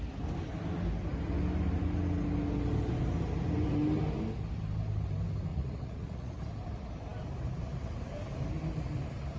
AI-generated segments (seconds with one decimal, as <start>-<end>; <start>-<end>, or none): 5.5-6.4